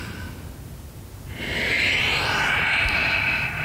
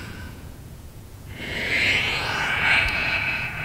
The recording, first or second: first